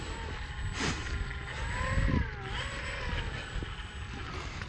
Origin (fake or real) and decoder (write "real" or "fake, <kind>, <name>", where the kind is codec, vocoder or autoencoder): real